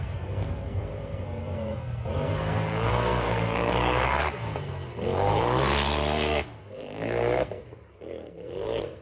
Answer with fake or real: fake